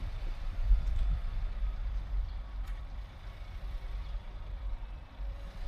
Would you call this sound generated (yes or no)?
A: yes